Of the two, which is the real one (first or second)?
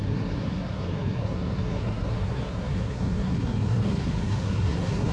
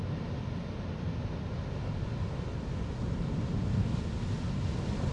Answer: second